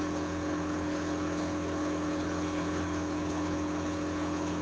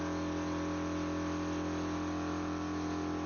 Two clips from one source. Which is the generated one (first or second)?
first